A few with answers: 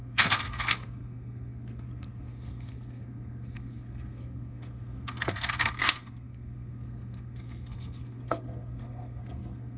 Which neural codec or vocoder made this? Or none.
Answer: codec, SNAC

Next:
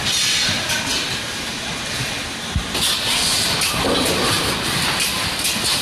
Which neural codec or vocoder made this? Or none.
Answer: none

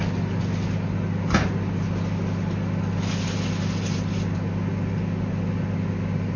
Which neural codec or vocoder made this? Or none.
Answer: none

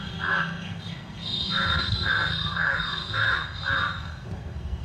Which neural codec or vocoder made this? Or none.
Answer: codec, SNAC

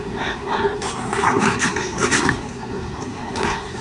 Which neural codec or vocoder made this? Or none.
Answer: codec, SNAC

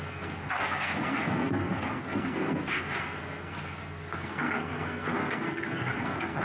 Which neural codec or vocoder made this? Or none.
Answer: codec, SNAC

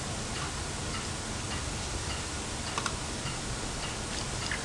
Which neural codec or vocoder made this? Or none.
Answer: none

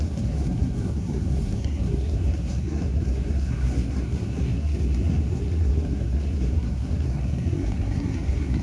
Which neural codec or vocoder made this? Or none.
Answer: codec, SNAC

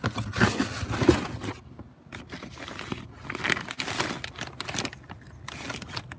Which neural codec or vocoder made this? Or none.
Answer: none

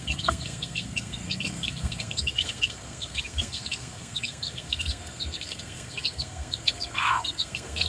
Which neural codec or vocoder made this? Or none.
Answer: codec, SNAC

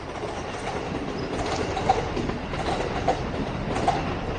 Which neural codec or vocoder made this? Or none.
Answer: none